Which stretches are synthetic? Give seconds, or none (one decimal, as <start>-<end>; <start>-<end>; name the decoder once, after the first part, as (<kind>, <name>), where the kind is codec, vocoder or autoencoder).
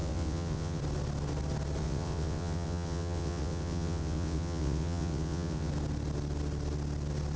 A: 0.0-0.8 (vocoder, WaveNeXt); 1.8-5.7